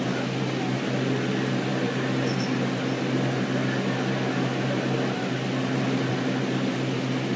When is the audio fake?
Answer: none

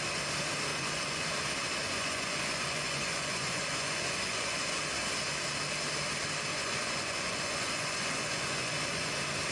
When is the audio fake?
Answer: 0.7-1.3 (vocoder, Vocos); 1.8-4.8; 6.5-9.1